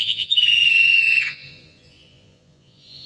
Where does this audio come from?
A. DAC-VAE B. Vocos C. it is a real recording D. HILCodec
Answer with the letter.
B